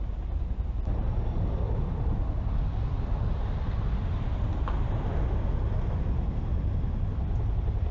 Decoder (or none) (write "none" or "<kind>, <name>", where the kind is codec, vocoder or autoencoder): none